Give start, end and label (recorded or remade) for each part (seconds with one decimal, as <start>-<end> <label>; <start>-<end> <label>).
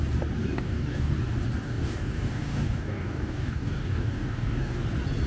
0.0-0.4 recorded; 0.4-1.1 remade; 1.1-1.6 recorded; 1.6-4.8 remade; 4.8-5.3 recorded